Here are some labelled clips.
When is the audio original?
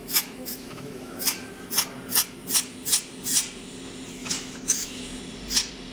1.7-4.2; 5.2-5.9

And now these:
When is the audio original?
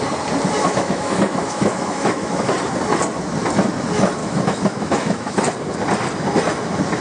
0.0-0.6; 2.5-4.2; 5.4-7.0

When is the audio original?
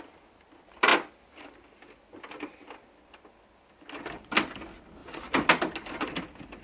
0.0-6.6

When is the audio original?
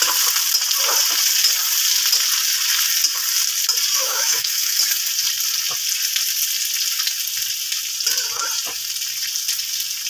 0.0-4.0; 4.8-10.1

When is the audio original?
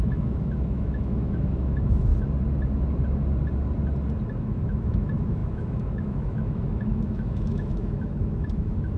2.1-4.4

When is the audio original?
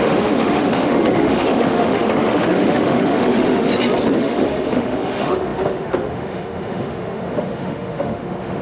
3.7-4.2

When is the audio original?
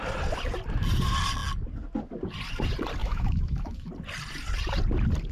0.0-3.0; 3.9-5.3